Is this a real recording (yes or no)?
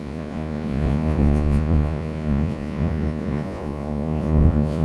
no